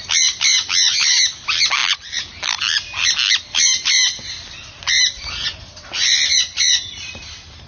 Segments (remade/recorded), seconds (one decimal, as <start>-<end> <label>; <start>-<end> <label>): 0.0-7.7 recorded